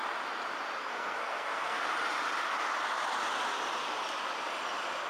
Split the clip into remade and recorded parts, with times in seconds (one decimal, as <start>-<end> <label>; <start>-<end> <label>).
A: 0.0-0.8 recorded; 0.8-1.8 remade; 1.8-5.1 recorded